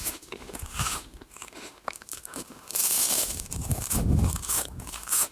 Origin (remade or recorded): remade